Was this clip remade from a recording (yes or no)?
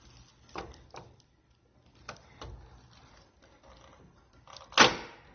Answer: no